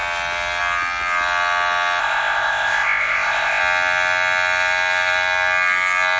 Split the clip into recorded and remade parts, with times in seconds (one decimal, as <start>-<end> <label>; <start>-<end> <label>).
0.0-2.0 recorded; 2.0-3.6 remade; 3.6-6.2 recorded